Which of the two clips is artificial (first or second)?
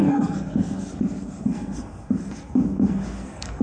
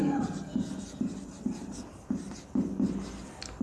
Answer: first